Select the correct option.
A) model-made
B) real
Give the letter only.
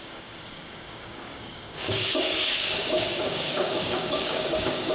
A